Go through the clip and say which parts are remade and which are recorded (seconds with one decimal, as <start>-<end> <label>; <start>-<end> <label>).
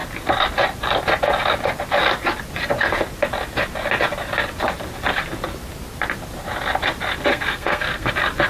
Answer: 0.0-7.3 recorded; 7.3-8.1 remade; 8.1-8.5 recorded